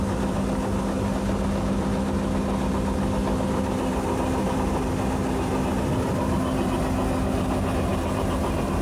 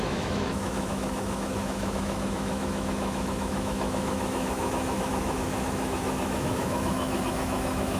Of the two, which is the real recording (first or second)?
first